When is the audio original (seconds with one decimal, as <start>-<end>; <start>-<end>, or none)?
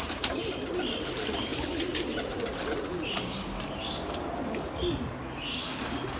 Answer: 0.0-1.5; 4.6-6.2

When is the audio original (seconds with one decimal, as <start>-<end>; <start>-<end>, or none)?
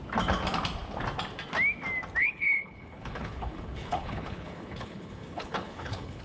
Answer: 0.0-2.2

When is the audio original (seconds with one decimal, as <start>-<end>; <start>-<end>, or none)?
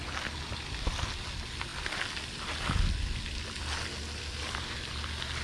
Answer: 0.0-5.4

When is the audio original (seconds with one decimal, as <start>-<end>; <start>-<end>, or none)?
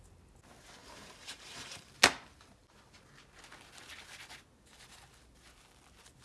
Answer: 0.0-0.8; 1.9-6.2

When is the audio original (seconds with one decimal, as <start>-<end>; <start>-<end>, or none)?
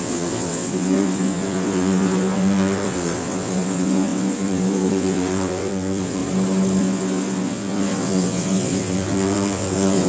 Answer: 6.2-6.8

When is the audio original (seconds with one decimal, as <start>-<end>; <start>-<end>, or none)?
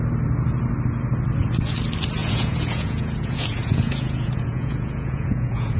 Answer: 0.0-2.2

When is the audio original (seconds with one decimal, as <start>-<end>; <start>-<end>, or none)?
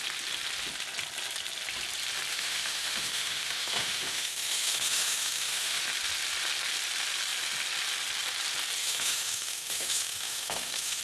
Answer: 0.0-2.3; 5.8-8.8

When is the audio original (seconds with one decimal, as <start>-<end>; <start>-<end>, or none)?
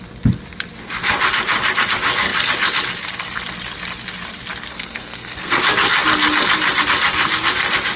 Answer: 0.0-4.7; 5.6-8.0